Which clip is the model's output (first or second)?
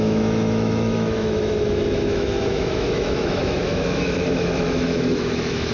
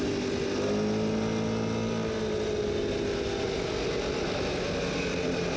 first